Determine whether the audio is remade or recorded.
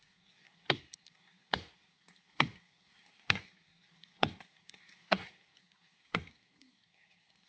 remade